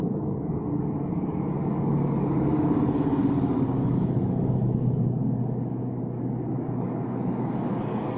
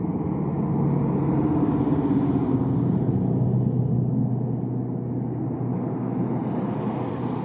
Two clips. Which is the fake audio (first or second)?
first